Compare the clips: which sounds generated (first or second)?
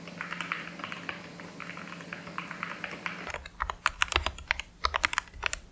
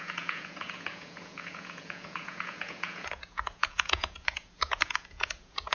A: second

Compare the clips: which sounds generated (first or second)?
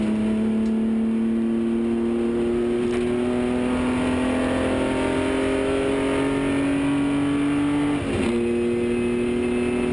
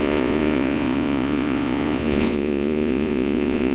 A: second